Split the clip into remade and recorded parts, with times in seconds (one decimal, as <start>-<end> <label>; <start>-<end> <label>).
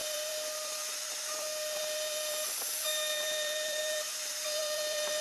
0.0-5.2 remade